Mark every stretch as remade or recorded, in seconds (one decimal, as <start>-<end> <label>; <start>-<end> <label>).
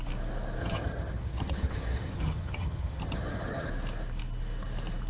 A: 0.0-0.6 recorded; 0.6-3.7 remade; 3.7-5.1 recorded